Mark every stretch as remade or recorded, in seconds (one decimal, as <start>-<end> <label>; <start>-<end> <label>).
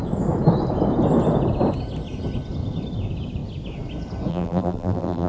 0.0-4.3 recorded; 4.3-5.3 remade